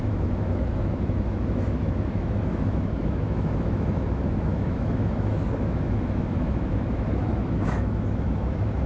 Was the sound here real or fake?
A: fake